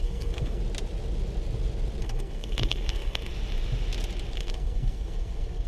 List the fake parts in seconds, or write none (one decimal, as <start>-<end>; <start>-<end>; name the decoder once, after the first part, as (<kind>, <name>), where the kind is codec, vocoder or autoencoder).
0.0-0.6 (codec, SNAC); 2.0-3.3; 4.4-5.7